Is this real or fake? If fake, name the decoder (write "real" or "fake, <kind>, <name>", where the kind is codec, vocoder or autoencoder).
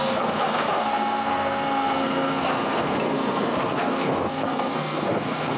fake, codec, SNAC